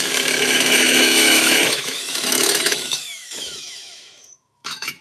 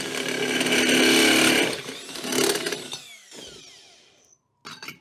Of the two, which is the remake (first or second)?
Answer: first